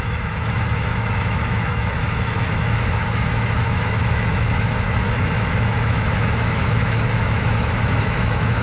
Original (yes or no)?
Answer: no